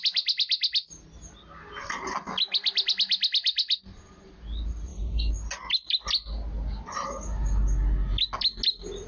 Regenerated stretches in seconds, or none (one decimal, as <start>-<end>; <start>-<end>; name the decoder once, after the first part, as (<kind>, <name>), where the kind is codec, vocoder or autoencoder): none